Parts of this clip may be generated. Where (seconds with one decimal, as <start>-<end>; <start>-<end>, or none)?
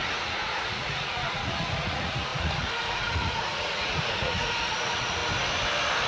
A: 0.0-5.2